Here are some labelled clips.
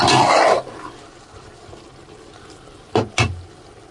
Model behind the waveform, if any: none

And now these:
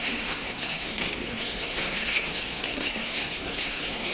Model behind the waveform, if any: codec, SNAC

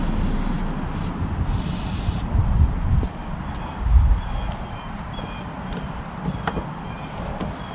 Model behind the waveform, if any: none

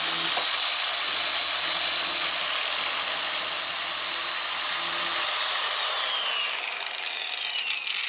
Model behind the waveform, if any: none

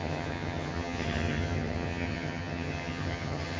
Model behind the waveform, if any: vocoder, HiFi-GAN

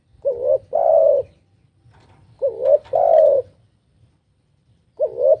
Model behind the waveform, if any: none